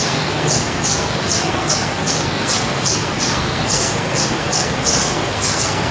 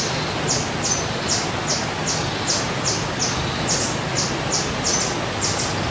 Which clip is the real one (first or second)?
second